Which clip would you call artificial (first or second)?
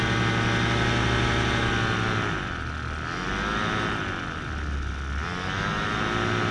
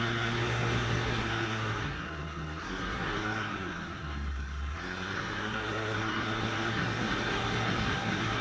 second